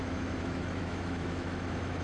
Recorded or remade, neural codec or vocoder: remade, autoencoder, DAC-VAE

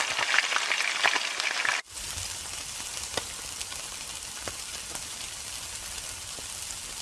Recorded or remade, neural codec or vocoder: recorded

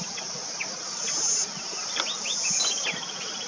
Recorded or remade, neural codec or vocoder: recorded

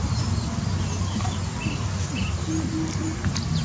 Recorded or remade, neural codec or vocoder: recorded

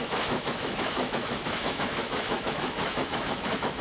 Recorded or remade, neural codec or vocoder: remade, autoencoder, DAC-VAE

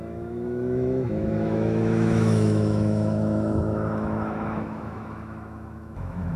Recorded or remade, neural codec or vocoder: remade, autoencoder, DAC-VAE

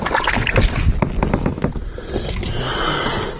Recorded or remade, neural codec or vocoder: recorded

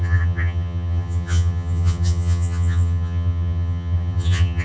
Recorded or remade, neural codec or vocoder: remade, vocoder, HiFi-GAN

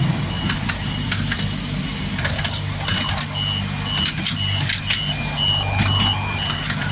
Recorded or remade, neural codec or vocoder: recorded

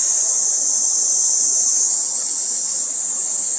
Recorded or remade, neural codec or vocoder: recorded